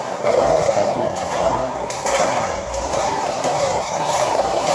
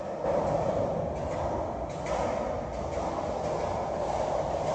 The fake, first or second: first